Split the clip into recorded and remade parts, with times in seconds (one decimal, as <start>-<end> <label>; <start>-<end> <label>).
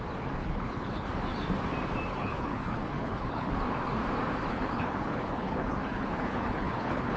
0.0-0.4 recorded; 0.4-1.1 remade; 1.1-2.1 recorded; 2.1-3.5 remade; 3.5-4.5 recorded; 4.5-7.2 remade